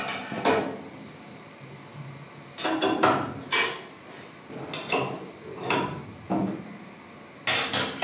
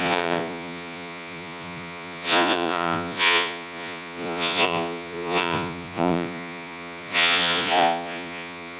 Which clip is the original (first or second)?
first